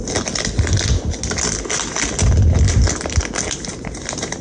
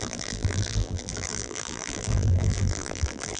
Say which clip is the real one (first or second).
first